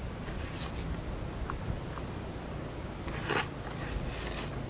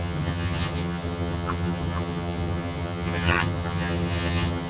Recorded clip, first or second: first